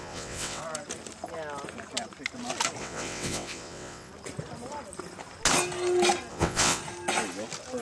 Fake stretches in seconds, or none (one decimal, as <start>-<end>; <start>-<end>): 0.0-0.6; 2.8-4.1; 6.3-6.8